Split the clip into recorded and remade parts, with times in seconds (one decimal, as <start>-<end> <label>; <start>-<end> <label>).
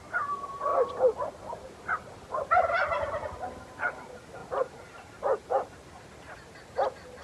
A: 0.0-7.2 recorded